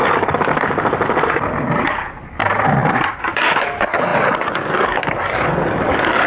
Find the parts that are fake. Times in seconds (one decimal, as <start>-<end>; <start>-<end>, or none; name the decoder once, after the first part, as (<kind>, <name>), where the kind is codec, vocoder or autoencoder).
0.0-0.5 (codec, DAC); 1.8-2.4; 3.2-6.3